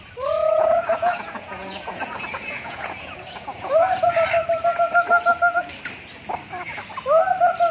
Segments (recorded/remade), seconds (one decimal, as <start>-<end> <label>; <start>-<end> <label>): 0.0-0.4 recorded; 0.4-4.1 remade; 4.1-7.7 recorded